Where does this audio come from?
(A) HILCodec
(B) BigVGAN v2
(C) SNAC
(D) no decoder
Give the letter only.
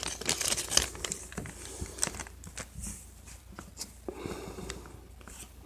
B